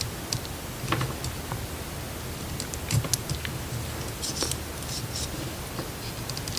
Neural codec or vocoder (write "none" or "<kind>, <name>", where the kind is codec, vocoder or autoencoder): none